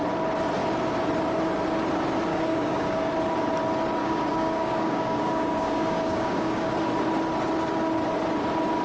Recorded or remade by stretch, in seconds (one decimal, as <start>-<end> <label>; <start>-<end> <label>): 0.0-2.3 recorded; 2.3-3.1 remade; 3.1-4.0 recorded; 4.0-6.7 remade; 6.7-8.8 recorded